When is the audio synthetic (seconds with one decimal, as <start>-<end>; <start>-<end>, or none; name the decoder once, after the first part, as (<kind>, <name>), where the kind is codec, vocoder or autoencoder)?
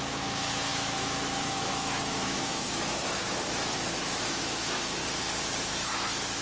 0.0-5.0 (autoencoder, DAC-VAE); 5.7-6.4